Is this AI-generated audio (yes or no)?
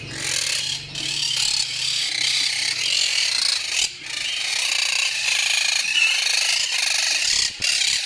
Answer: no